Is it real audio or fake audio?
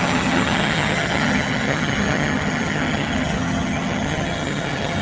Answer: fake